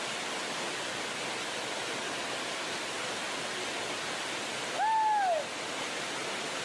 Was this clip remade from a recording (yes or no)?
no